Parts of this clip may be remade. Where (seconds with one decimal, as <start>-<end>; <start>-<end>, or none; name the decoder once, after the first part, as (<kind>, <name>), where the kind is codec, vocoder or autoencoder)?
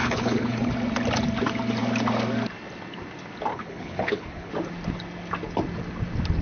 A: 0.0-0.7 (codec, HILCodec); 3.5-4.5